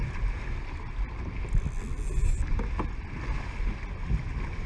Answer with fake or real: real